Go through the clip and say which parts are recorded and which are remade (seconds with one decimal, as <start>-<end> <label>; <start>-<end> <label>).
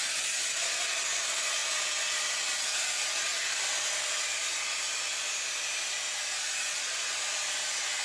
0.0-8.0 recorded